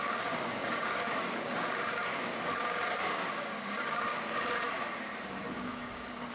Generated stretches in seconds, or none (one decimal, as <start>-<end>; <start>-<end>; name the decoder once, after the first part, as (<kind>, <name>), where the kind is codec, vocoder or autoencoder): 0.0-4.1 (codec, DAC); 5.5-6.3